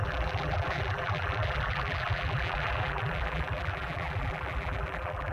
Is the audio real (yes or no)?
no